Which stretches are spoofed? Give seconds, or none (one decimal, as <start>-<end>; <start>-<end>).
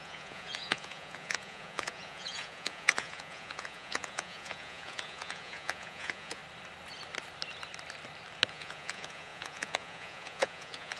0.0-6.4; 8.5-11.0